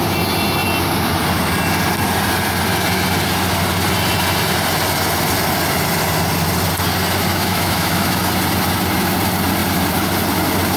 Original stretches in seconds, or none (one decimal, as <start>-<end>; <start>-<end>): 0.0-7.3; 8.2-10.8